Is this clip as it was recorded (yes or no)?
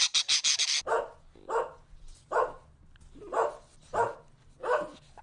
yes